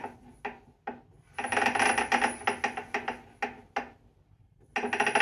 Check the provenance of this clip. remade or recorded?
recorded